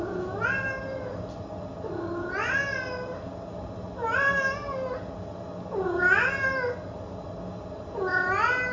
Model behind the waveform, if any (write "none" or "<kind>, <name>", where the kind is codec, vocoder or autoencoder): none